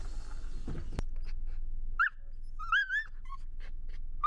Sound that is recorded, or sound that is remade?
recorded